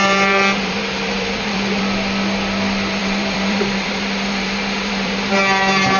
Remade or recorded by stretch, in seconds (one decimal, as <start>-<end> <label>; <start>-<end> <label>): 0.0-1.8 remade; 1.8-3.0 recorded; 3.0-5.3 remade; 5.3-6.0 recorded